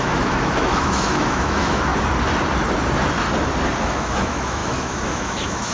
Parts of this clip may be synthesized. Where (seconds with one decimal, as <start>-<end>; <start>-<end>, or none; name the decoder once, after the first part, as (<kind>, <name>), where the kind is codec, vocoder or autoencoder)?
0.0-1.9 (autoencoder, DAC-VAE); 3.8-5.7

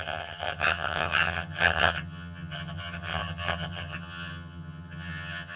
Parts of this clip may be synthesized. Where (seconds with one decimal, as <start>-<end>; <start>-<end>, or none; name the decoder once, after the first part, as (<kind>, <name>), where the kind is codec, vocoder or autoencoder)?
0.0-5.6 (vocoder, HiFi-GAN)

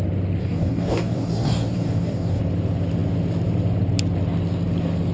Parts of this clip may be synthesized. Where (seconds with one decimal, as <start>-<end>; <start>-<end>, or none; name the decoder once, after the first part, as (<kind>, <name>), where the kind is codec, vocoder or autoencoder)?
0.4-2.4 (codec, DAC)

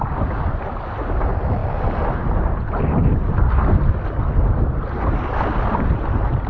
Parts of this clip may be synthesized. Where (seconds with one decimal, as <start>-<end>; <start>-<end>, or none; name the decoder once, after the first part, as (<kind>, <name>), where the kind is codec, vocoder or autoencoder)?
none

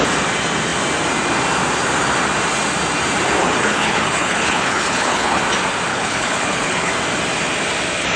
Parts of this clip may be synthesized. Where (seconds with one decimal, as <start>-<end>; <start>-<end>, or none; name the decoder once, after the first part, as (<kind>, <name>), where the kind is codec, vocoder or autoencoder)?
3.4-5.4 (codec, HILCodec); 5.9-6.9

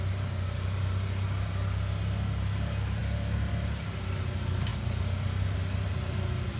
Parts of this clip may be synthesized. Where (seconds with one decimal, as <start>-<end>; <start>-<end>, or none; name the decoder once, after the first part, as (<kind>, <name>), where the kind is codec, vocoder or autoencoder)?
3.0-3.5 (vocoder, BigVGAN v2)

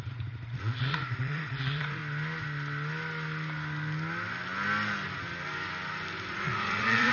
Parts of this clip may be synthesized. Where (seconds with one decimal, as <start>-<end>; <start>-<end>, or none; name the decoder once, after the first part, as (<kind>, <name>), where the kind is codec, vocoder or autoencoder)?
0.0-2.0 (vocoder, Vocos); 6.3-7.1

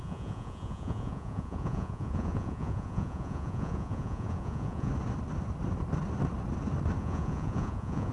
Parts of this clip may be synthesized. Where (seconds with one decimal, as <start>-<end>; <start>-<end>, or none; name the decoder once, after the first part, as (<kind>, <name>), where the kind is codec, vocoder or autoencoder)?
0.0-4.9 (vocoder, Vocos); 7.0-8.1